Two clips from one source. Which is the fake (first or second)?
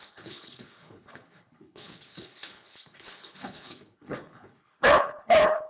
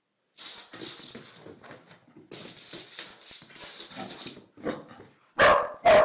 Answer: first